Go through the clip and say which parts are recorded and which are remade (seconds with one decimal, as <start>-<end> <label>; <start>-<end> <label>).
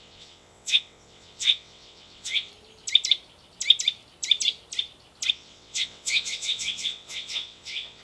0.0-2.5 remade; 2.5-5.3 recorded; 5.3-8.0 remade